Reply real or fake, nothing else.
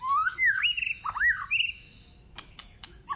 fake